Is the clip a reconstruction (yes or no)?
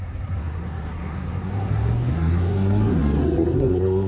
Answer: yes